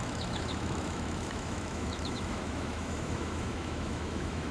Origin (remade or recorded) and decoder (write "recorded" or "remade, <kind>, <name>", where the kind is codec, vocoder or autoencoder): remade, autoencoder, DAC-VAE